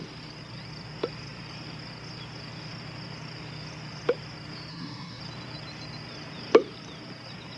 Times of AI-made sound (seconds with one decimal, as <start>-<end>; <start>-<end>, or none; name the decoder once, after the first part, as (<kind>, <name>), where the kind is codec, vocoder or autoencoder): 4.7-5.2 (codec, SNAC)